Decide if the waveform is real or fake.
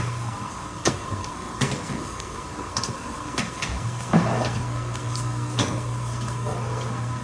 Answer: fake